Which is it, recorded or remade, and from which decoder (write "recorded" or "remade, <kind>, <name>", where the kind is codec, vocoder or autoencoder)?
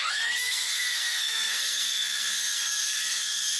remade, codec, SNAC